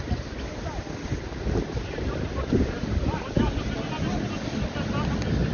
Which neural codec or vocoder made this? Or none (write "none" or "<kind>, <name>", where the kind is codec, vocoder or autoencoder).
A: none